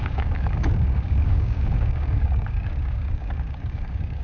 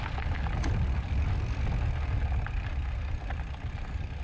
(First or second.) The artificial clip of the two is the first